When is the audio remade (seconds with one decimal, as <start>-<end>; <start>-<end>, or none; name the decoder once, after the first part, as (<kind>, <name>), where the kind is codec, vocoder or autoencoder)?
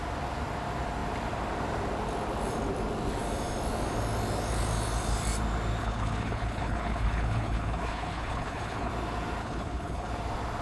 5.8-8.9 (codec, HILCodec); 9.4-10.1